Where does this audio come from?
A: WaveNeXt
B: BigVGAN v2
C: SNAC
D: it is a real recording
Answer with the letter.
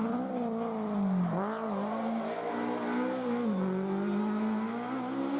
D